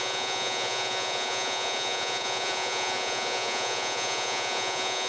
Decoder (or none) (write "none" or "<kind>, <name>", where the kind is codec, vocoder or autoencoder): vocoder, Vocos